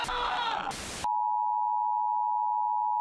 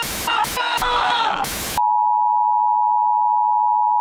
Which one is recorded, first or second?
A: first